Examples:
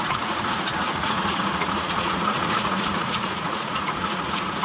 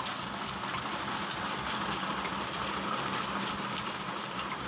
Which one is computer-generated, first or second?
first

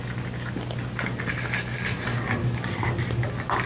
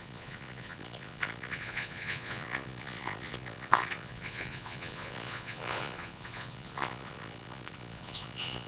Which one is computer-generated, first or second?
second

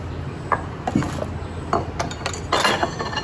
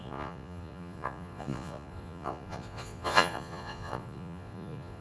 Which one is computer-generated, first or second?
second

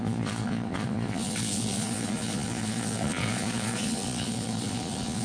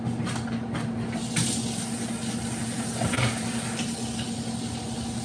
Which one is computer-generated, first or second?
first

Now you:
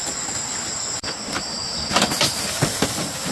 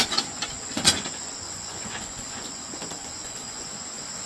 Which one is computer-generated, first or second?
second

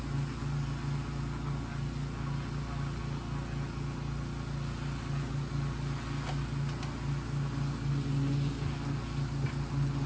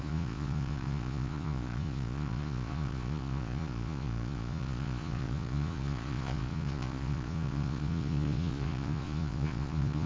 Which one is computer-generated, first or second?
second